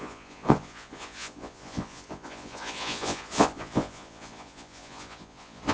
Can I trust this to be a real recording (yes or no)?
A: no